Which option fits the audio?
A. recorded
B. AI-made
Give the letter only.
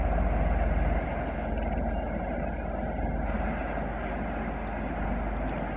A